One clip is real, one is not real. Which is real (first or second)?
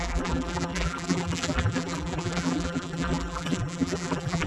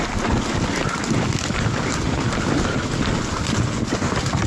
second